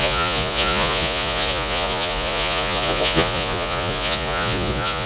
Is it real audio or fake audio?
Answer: fake